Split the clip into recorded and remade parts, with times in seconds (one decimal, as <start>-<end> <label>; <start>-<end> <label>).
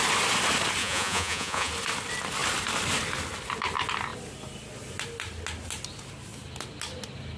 0.0-0.8 recorded; 0.8-1.7 remade; 1.7-7.4 recorded